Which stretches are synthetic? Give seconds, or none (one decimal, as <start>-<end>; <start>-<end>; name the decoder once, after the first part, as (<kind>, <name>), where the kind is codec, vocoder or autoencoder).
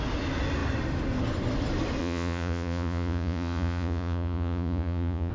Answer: 2.0-5.3 (vocoder, Vocos)